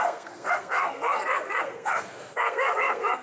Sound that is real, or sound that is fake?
fake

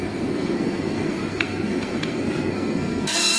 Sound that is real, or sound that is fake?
fake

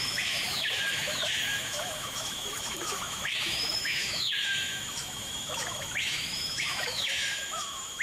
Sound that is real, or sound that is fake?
fake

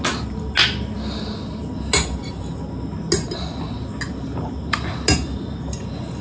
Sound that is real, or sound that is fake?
real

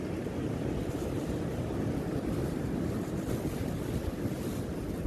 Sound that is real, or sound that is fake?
real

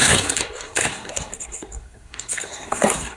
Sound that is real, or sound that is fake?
fake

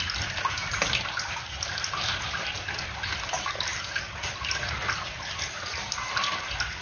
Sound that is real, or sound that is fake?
real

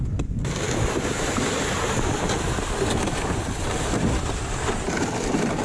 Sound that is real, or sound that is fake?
real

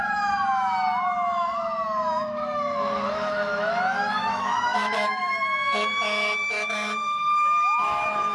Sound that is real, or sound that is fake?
fake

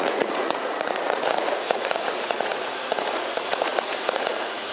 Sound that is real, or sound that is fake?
fake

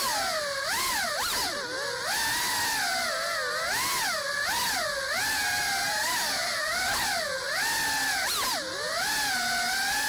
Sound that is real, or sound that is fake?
real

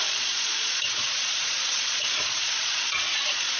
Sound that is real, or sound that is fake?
fake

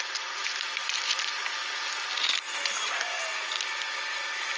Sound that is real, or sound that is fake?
real